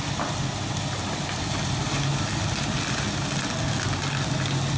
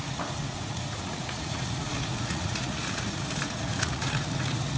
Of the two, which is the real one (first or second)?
first